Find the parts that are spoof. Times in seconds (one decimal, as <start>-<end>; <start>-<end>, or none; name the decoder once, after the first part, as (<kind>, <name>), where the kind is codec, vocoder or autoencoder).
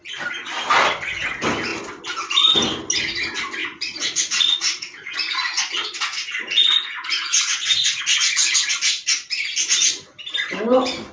3.6-8.0 (vocoder, Vocos)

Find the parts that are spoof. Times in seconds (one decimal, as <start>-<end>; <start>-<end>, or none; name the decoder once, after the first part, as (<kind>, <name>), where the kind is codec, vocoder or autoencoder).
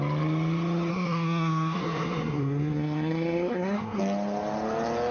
0.9-4.0 (codec, SNAC)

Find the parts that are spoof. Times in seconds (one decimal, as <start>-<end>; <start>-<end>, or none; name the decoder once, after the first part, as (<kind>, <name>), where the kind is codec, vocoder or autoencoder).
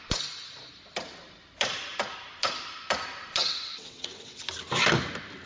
3.4-4.4 (vocoder, WaveNeXt)